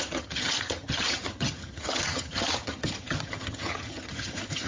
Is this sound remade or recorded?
remade